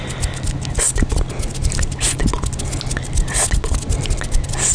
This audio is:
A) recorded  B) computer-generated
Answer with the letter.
A